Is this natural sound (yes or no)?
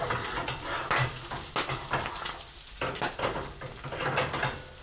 yes